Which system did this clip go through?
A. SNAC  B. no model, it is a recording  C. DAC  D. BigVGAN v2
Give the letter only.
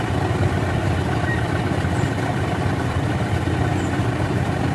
D